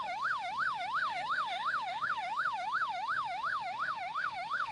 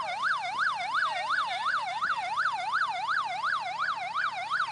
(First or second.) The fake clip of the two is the first